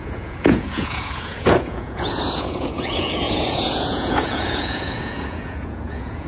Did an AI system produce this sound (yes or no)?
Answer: yes